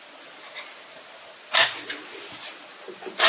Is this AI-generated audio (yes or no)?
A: no